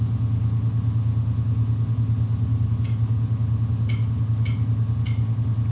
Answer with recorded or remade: recorded